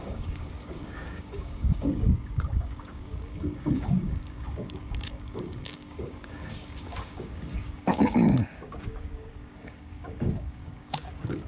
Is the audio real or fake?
fake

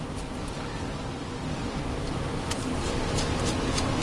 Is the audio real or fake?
real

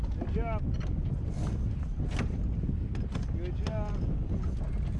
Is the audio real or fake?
real